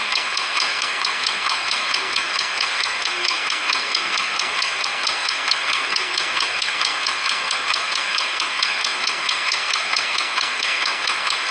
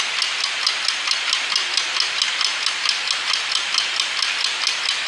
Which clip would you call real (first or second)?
second